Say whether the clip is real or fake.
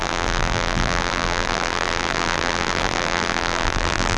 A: fake